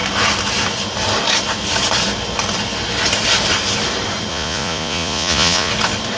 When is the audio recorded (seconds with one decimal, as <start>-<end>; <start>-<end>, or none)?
0.0-4.3; 5.7-6.2